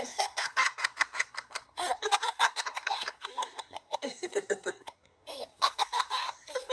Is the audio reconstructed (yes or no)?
yes